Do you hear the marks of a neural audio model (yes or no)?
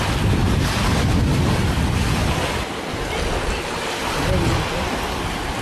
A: no